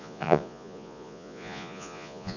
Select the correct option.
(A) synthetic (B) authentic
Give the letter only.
A